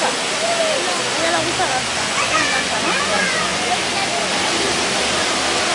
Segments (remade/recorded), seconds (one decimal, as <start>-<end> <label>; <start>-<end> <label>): 0.0-1.9 recorded; 1.9-3.7 remade; 3.7-5.7 recorded

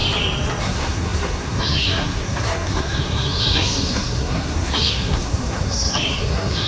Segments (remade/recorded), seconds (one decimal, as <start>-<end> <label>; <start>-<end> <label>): 0.0-0.6 recorded; 0.6-6.7 remade

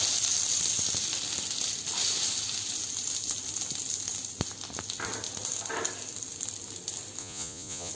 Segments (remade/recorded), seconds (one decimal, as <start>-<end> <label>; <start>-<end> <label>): 0.0-7.2 recorded; 7.2-7.9 remade

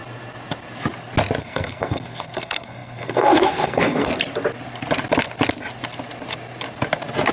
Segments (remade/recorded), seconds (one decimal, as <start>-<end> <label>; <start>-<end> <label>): 0.0-1.4 recorded; 1.4-4.1 remade; 4.1-7.3 recorded

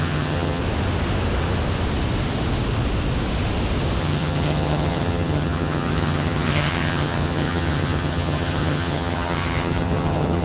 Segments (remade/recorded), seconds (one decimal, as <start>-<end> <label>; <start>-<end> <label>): 0.0-0.6 remade; 0.6-4.0 recorded; 4.0-10.4 remade

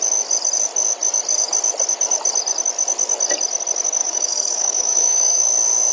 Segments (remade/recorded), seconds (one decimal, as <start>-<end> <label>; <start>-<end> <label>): 0.0-4.0 recorded; 4.0-5.4 remade; 5.4-5.9 recorded

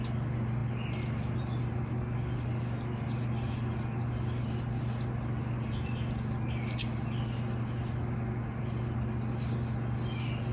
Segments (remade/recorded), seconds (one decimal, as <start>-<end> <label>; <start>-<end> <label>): 0.0-10.5 recorded